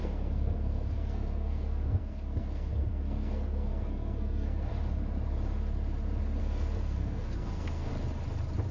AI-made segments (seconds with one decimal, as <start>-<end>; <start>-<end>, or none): 0.0-4.7; 6.4-7.9